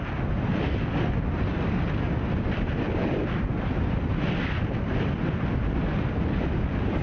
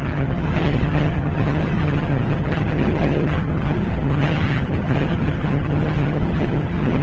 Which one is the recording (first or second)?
first